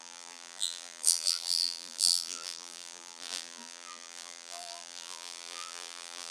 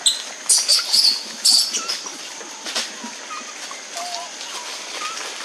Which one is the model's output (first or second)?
first